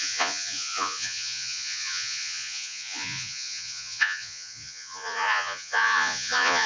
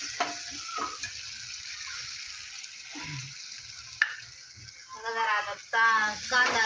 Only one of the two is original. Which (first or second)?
second